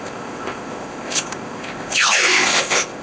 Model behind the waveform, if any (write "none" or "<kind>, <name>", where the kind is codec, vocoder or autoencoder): codec, ZipCodec